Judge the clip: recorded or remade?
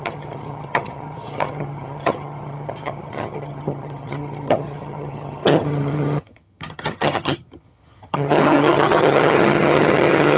remade